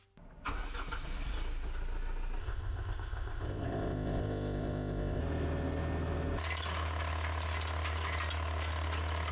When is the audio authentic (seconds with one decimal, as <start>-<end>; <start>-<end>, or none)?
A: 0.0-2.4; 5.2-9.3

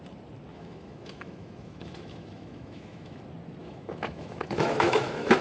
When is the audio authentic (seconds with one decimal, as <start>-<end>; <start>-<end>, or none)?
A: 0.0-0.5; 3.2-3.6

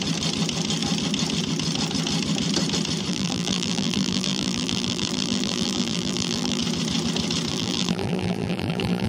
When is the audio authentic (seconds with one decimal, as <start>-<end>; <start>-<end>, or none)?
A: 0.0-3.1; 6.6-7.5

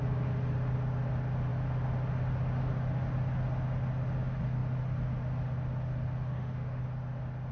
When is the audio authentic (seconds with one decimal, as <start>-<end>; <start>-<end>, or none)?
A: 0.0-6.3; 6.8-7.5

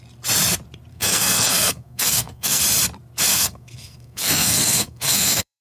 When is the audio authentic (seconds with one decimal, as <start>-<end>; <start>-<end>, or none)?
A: 0.0-0.9; 2.6-3.3